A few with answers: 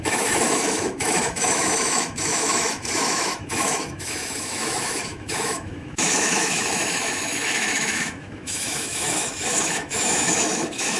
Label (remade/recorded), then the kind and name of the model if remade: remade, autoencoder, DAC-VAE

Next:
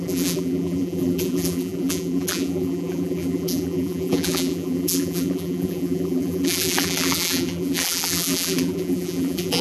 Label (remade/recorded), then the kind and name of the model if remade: remade, vocoder, BigVGAN v2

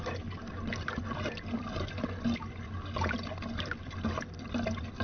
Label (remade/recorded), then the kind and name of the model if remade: recorded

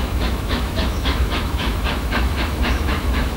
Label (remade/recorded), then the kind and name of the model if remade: remade, autoencoder, DAC-VAE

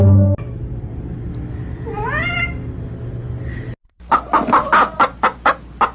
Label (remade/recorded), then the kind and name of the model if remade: recorded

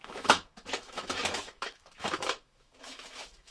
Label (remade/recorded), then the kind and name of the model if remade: remade, autoencoder, DAC-VAE